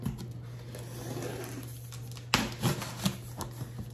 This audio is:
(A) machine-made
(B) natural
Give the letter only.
B